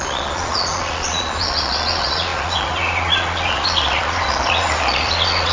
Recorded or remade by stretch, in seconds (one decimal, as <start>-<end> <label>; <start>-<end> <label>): 0.0-5.5 remade